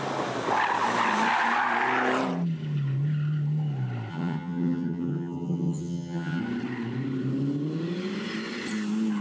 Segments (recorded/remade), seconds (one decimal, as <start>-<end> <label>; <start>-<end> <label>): 0.0-4.1 recorded; 4.1-6.4 remade; 6.4-9.2 recorded